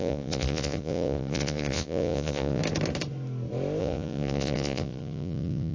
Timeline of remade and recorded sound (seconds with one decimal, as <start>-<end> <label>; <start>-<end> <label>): 0.0-2.6 remade; 2.6-3.8 recorded; 3.8-5.7 remade